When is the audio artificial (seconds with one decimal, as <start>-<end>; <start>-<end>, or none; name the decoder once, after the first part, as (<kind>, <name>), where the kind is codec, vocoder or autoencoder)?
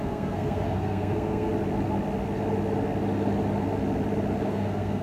0.0-1.5 (codec, SNAC); 4.5-5.0